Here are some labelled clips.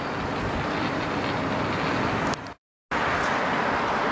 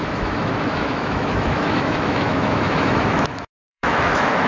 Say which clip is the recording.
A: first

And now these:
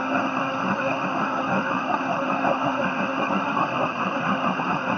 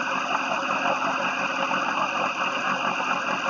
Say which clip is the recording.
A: second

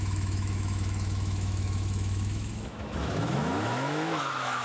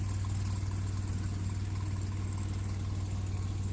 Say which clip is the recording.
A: second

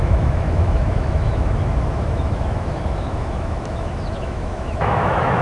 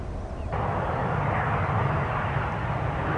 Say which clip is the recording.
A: second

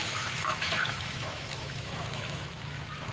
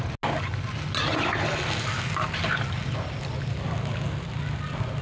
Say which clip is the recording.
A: second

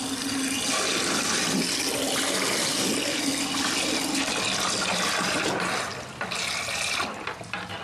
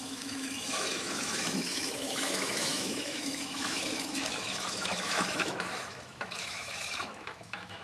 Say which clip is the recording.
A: first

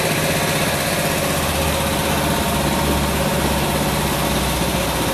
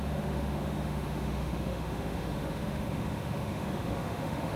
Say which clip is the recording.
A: first